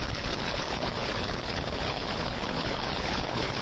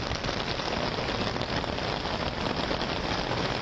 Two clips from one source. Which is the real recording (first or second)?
second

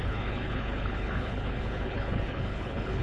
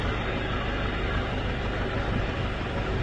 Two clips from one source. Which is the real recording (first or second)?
second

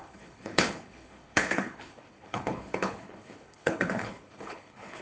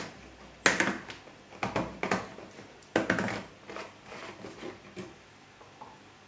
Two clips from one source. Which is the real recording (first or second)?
second